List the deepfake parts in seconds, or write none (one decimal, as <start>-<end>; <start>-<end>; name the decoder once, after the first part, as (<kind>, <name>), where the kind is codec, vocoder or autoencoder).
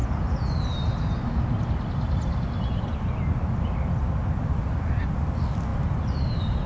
5.7-6.7 (vocoder, BigVGAN v2)